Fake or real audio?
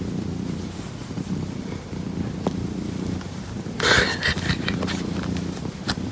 real